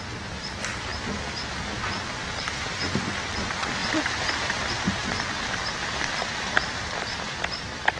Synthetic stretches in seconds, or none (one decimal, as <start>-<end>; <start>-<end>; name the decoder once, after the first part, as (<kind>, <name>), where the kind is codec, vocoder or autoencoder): 0.0-0.9 (vocoder, BigVGAN v2); 2.5-3.8; 4.4-5.0; 5.6-8.0